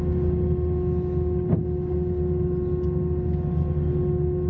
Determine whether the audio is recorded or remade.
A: recorded